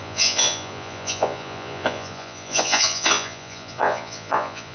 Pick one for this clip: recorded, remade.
remade